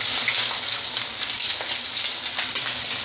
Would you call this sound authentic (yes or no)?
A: yes